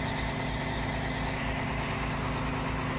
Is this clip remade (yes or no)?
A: no